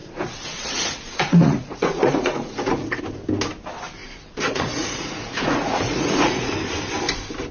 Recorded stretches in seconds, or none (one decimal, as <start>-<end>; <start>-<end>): 3.0-4.0; 6.5-7.5